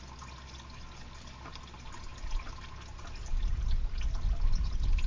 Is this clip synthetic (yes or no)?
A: no